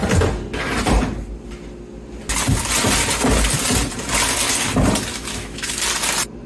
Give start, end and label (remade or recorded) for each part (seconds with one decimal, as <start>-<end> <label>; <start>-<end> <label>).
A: 0.0-5.1 recorded; 5.1-5.8 remade; 5.8-6.5 recorded

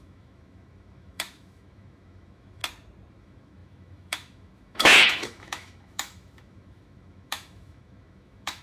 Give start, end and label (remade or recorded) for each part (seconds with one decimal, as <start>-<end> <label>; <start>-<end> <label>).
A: 0.0-2.6 remade; 2.6-3.1 recorded; 3.1-8.6 remade

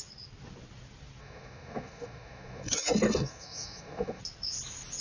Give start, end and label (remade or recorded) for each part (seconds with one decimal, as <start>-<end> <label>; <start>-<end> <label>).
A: 0.0-1.2 recorded; 1.2-4.2 remade; 4.2-5.0 recorded

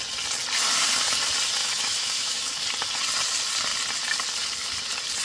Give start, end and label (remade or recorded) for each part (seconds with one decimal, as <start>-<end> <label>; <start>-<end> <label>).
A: 0.0-1.6 recorded; 1.6-2.5 remade; 2.5-5.2 recorded

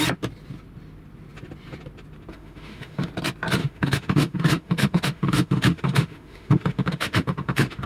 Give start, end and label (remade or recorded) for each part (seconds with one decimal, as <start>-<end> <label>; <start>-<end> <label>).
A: 0.0-2.3 recorded; 2.3-3.1 remade; 3.1-3.6 recorded; 3.6-7.9 remade

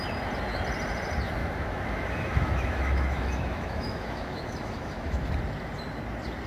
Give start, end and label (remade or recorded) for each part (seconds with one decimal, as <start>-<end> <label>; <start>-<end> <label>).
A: 0.0-1.4 recorded; 1.4-5.3 remade; 5.3-6.5 recorded